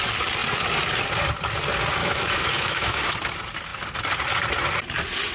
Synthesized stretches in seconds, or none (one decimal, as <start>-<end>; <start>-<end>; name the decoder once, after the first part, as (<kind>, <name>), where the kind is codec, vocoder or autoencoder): 2.0-3.0 (autoencoder, DAC-VAE)

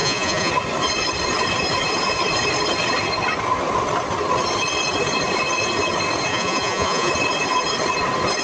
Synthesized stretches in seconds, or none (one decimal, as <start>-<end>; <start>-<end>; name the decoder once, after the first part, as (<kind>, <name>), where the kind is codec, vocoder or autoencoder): 0.0-0.5 (vocoder, Vocos); 6.3-7.1

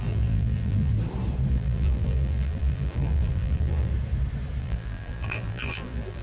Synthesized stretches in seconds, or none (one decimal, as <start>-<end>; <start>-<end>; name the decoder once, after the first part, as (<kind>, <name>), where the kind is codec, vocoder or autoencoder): 0.0-0.9 (vocoder, BigVGAN v2); 1.5-3.9; 4.6-6.2

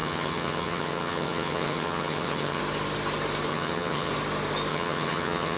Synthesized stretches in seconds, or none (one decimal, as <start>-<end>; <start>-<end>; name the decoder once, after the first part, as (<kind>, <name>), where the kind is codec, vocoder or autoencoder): 0.0-2.6 (vocoder, HiFi-GAN); 3.5-4.1; 4.7-5.6

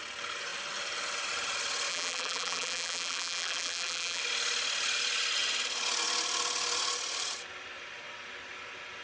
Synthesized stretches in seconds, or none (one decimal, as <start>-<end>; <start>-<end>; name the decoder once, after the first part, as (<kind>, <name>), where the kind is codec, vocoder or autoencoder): 1.9-4.2 (vocoder, BigVGAN v2)